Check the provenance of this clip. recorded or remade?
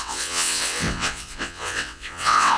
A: remade